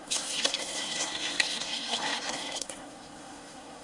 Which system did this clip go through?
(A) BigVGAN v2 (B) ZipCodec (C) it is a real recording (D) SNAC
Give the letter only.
D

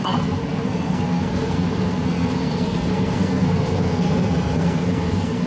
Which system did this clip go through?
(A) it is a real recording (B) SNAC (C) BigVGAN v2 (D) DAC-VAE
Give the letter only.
B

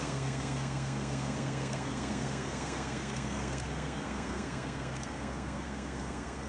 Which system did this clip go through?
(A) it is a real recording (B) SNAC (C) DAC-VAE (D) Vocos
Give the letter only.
B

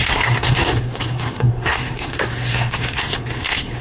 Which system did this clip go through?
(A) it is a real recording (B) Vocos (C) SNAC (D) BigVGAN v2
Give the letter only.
C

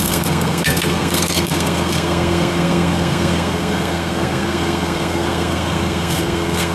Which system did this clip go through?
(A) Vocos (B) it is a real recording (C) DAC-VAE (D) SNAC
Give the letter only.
D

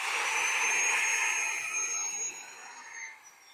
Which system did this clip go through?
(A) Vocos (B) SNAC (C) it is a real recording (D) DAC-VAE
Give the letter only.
C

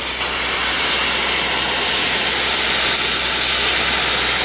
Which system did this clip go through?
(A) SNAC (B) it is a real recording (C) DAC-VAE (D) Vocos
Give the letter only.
B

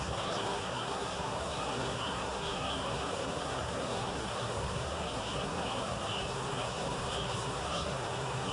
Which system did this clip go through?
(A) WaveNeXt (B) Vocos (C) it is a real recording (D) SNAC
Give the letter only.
D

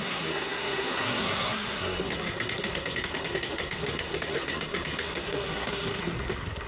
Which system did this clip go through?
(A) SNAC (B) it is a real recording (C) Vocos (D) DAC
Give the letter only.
A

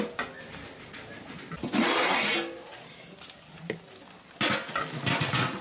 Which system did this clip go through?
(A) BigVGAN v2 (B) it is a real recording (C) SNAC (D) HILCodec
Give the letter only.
B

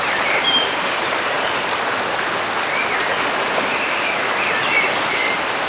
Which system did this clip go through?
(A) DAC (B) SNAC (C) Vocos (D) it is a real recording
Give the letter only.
D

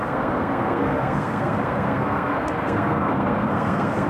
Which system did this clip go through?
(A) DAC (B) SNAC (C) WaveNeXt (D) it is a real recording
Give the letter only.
B